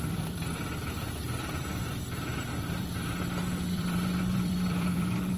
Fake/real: fake